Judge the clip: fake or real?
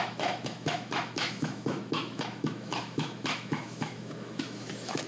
fake